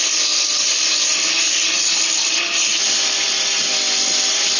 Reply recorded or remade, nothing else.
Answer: remade